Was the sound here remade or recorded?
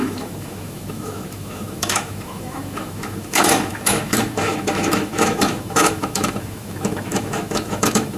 remade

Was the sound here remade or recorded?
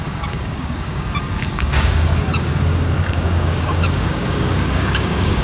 remade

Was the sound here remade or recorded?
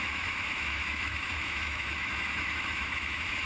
remade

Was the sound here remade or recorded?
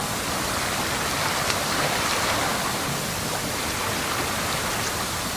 recorded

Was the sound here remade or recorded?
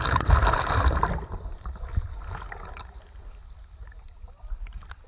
recorded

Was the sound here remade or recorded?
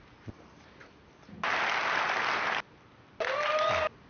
recorded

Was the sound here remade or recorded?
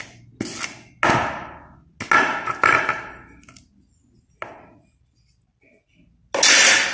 recorded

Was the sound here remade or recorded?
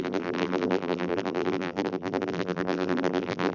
remade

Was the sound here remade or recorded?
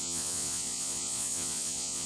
remade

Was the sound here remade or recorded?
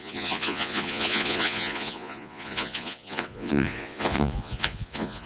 remade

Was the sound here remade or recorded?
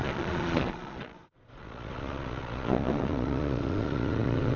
remade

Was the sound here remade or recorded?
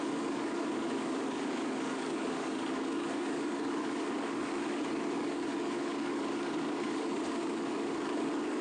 remade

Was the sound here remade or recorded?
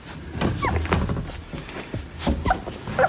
recorded